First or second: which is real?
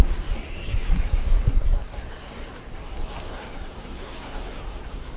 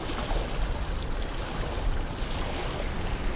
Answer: second